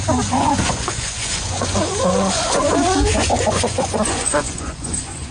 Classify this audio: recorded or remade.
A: remade